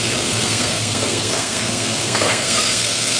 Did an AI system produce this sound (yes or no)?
yes